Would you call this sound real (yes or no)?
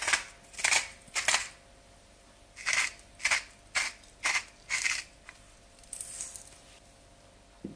yes